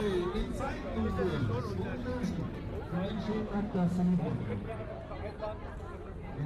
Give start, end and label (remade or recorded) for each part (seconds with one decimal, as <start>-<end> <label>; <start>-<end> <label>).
0.0-3.3 recorded; 3.3-4.2 remade; 4.2-6.5 recorded